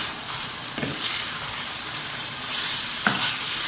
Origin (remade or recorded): remade